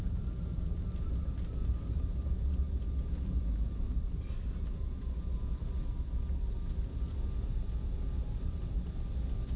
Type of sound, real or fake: real